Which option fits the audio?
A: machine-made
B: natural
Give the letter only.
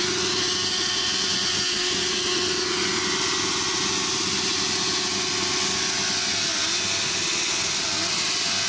B